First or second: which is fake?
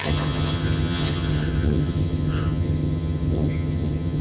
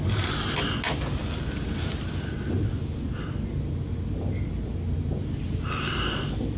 first